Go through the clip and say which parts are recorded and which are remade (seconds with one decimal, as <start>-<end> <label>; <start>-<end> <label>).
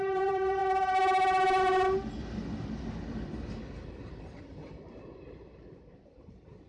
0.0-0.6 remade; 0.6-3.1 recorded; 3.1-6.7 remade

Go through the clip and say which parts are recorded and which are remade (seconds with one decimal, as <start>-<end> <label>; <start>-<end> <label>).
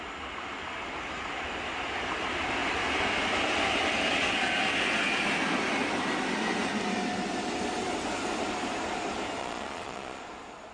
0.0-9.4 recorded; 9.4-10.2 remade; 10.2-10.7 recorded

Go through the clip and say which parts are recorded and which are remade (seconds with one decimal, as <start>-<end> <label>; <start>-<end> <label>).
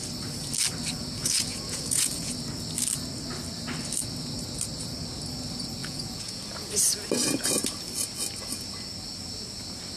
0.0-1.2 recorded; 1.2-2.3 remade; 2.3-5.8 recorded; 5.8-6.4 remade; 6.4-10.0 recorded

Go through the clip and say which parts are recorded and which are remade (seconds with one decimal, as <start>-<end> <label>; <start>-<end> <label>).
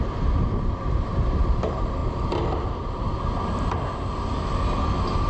0.0-2.0 remade; 2.0-5.3 recorded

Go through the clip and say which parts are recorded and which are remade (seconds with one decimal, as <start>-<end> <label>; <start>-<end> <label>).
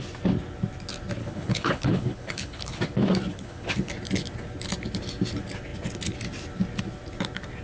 0.0-1.2 recorded; 1.2-2.8 remade; 2.8-3.3 recorded; 3.3-3.9 remade; 3.9-7.6 recorded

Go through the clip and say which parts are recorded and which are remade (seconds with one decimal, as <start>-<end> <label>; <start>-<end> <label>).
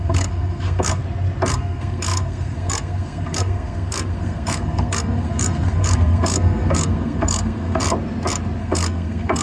0.0-1.0 remade; 1.0-1.5 recorded; 1.5-7.8 remade; 7.8-8.6 recorded; 8.6-9.4 remade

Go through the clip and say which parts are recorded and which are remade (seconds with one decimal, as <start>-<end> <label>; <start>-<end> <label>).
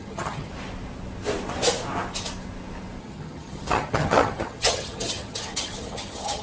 0.0-0.5 remade; 0.5-3.0 recorded; 3.0-6.4 remade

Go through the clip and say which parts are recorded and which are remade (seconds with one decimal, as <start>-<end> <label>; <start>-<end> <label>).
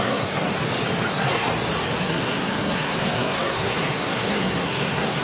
0.0-0.5 remade; 0.5-1.1 recorded; 1.1-1.5 remade; 1.5-2.0 recorded; 2.0-5.2 remade